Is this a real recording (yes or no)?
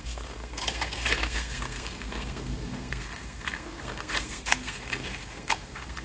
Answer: no